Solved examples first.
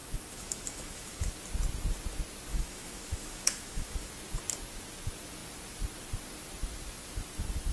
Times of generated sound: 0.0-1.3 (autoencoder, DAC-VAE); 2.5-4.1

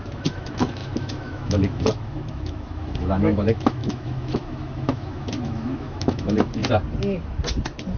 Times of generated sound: 0.0-6.6 (autoencoder, DAC-VAE)

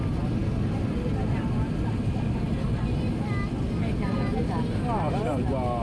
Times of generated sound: none

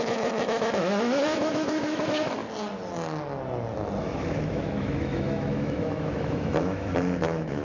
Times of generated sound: 0.0-2.4 (autoencoder, DAC-VAE); 4.0-7.6

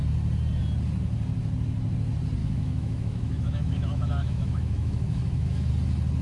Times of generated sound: 2.4-5.7 (autoencoder, DAC-VAE)

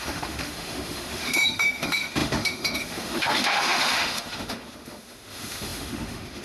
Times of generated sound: 0.0-6.4 (autoencoder, DAC-VAE)

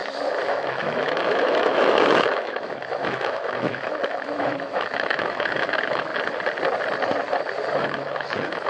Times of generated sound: 0.0-6.1 (autoencoder, DAC-VAE); 7.8-8.7

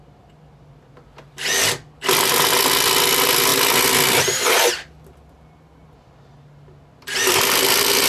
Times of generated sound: none